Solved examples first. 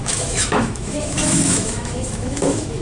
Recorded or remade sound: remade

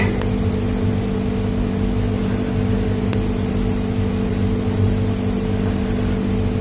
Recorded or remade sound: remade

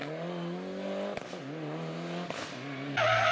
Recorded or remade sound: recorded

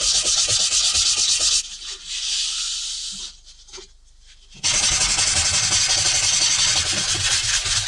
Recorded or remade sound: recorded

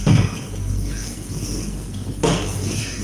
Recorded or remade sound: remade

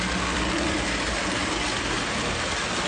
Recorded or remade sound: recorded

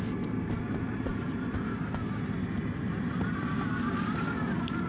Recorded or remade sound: recorded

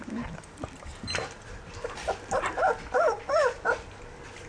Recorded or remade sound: recorded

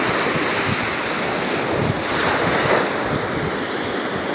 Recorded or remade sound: recorded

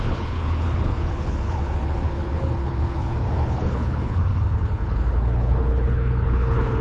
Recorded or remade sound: remade